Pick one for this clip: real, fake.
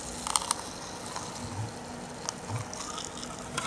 real